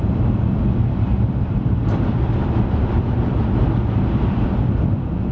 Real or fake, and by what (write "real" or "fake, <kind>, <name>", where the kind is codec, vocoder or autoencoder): fake, vocoder, BigVGAN v2